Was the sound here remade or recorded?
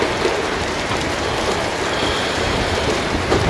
remade